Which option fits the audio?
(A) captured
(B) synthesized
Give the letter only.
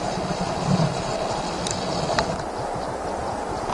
A